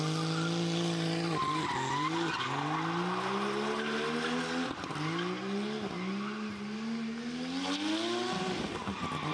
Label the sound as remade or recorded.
recorded